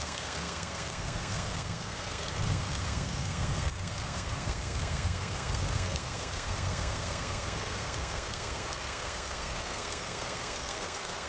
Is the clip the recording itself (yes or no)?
no